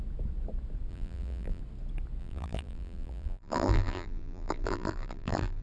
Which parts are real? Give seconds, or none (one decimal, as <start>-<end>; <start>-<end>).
0.0-0.9; 1.6-2.2